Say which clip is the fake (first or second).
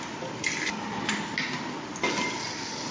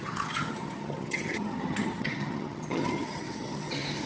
second